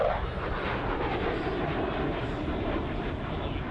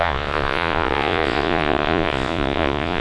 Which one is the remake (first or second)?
second